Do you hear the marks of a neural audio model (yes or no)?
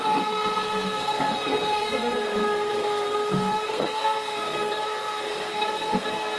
yes